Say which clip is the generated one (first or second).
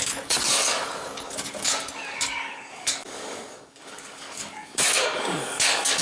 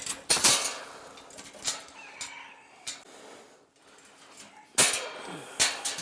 first